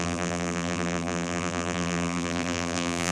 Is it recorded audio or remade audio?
remade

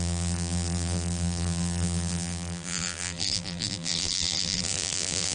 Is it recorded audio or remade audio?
remade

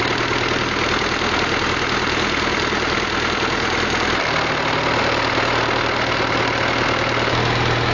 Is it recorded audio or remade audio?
recorded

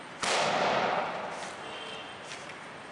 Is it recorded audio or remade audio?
recorded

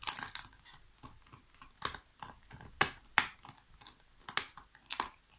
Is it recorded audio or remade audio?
recorded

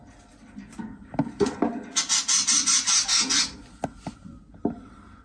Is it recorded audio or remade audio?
recorded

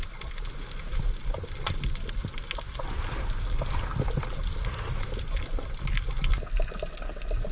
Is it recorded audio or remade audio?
recorded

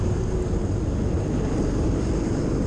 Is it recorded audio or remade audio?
recorded